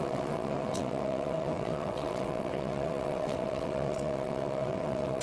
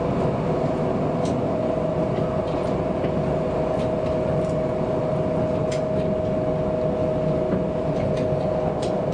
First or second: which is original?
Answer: second